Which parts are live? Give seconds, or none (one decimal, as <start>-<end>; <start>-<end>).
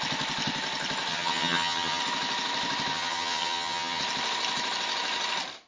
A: 0.0-1.1; 2.0-2.9; 4.0-5.7